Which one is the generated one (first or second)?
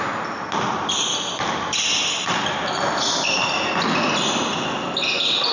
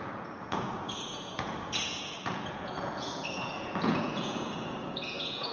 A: second